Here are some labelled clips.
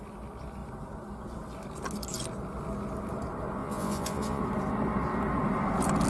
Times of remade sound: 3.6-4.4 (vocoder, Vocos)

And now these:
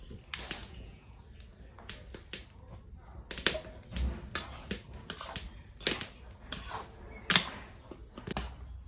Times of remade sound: 0.6-1.2 (vocoder, Vocos)